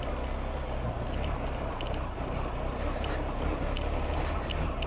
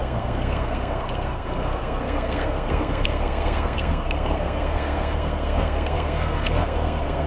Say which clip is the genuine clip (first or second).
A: first